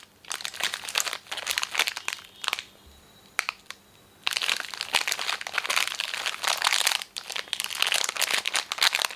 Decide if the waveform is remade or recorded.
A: recorded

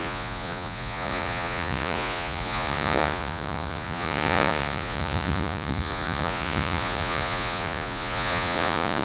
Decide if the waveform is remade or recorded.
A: remade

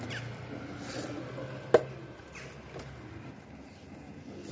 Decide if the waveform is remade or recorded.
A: recorded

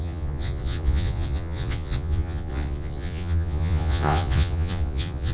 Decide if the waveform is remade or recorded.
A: remade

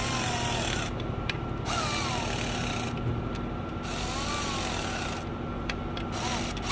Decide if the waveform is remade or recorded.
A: recorded